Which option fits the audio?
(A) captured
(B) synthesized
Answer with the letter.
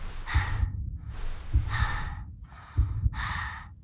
B